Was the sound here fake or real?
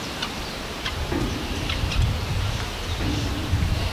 fake